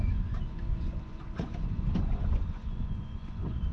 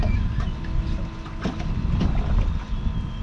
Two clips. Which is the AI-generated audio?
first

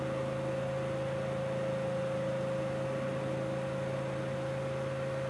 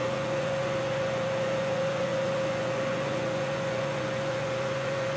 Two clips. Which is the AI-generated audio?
second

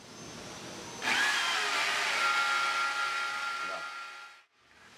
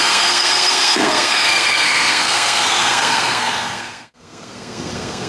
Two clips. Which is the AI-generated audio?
second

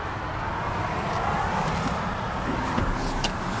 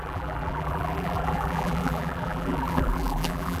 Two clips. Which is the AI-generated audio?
second